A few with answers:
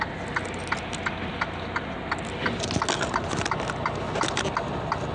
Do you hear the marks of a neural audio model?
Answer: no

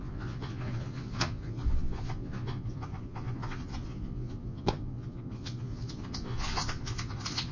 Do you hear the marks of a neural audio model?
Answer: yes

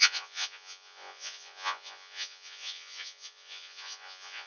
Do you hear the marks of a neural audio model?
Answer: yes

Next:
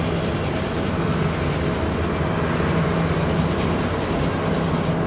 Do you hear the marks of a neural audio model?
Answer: no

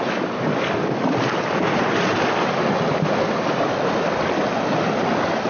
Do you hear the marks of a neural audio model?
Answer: no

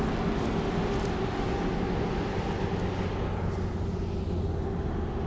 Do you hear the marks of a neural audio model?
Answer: no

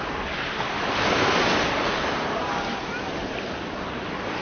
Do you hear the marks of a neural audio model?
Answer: no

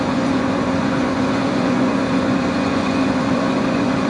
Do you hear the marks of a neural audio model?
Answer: yes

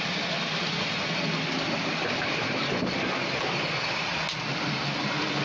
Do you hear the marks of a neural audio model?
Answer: no